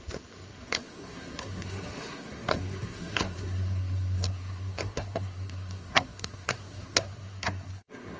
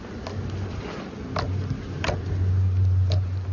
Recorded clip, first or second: second